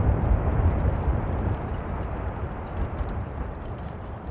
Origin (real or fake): fake